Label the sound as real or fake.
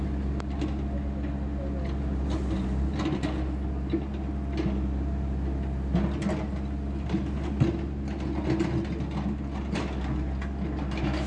real